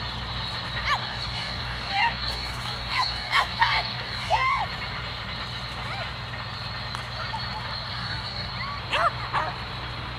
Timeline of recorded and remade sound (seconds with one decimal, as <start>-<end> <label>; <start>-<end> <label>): 0.0-1.0 recorded; 1.0-4.6 remade; 4.6-7.9 recorded; 7.9-8.5 remade; 8.5-10.2 recorded